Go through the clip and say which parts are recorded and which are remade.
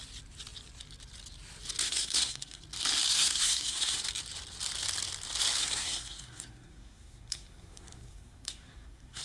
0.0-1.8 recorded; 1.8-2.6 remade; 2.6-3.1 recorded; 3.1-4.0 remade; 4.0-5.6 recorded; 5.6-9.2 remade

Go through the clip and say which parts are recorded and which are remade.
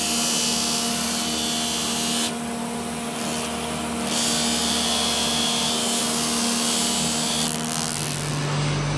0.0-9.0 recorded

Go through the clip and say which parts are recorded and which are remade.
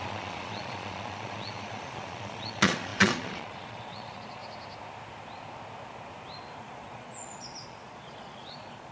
0.0-4.4 remade; 4.4-6.6 recorded; 6.6-8.9 remade